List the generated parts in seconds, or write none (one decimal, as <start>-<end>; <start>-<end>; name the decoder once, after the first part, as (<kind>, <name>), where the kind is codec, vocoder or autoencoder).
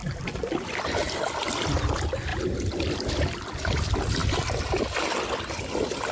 2.3-3.2 (vocoder, BigVGAN v2)